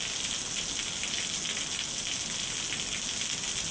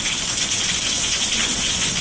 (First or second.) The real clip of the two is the first